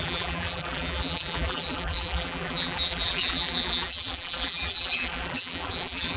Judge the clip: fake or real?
fake